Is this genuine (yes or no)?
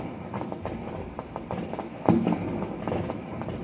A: yes